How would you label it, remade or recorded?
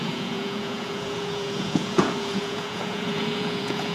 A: remade